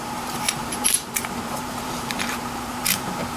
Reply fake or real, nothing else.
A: fake